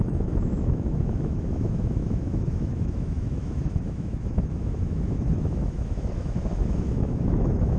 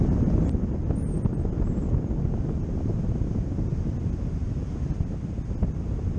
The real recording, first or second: second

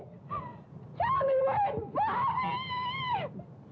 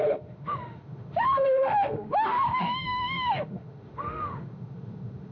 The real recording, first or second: first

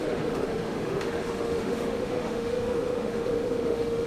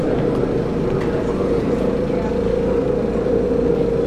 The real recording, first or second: second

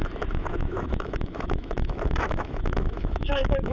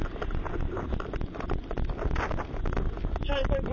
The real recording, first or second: second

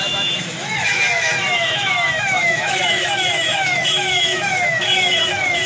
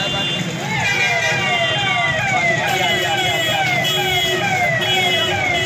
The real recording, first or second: second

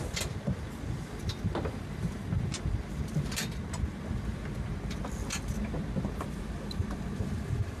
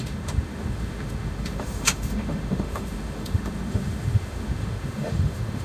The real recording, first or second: first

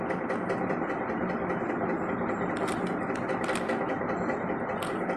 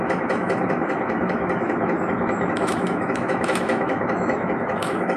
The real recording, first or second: first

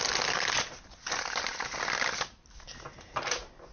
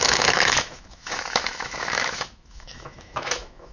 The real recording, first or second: first